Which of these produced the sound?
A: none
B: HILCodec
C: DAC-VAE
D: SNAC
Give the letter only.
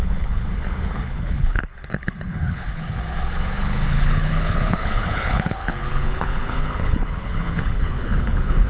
B